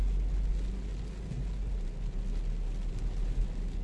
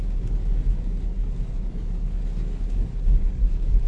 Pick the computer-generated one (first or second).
second